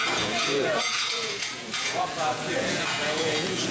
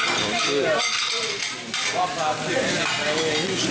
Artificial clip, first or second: first